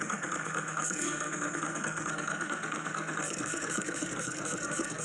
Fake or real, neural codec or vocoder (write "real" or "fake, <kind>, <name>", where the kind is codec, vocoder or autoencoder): fake, codec, SNAC